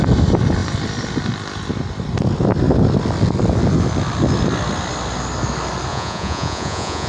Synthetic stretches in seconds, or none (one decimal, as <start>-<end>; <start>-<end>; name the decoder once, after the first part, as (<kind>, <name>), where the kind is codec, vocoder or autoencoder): 5.9-7.1 (vocoder, Vocos)